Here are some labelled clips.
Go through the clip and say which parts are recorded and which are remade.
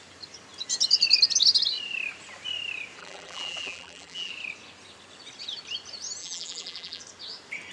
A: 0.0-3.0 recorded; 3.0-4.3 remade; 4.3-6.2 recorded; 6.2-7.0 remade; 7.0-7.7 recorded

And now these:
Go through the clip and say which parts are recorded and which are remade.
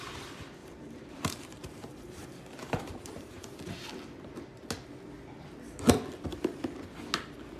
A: 0.0-0.6 recorded; 0.6-3.9 remade; 3.9-7.6 recorded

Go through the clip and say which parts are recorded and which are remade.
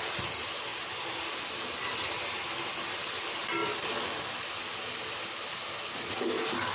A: 0.0-0.7 remade; 0.7-1.8 recorded; 1.8-3.6 remade; 3.6-6.1 recorded; 6.1-6.7 remade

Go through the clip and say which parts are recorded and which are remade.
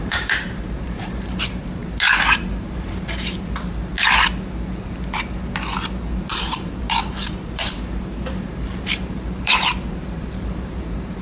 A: 0.0-1.8 remade; 1.8-2.3 recorded; 2.3-3.9 remade; 3.9-6.3 recorded; 6.3-11.2 remade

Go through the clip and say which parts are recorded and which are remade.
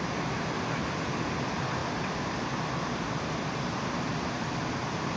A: 0.0-1.8 recorded; 1.8-4.5 remade; 4.5-5.2 recorded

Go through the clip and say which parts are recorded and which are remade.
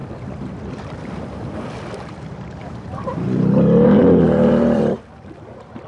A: 0.0-2.6 recorded; 2.6-5.9 remade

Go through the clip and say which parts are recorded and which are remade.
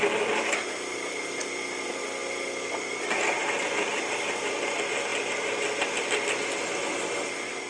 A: 0.0-3.4 recorded; 3.4-4.1 remade; 4.1-7.7 recorded